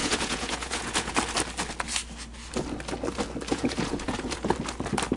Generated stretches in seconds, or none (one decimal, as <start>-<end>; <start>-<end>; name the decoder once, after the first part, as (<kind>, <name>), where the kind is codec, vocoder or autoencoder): 0.0-1.1 (vocoder, Vocos); 3.5-4.5